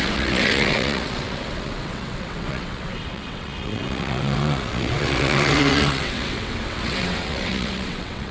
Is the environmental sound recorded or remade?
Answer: remade